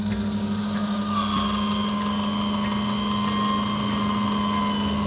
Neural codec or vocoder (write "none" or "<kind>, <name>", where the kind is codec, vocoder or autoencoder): none